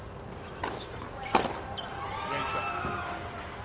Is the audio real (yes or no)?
yes